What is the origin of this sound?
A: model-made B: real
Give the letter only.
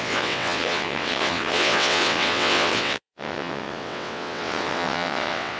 A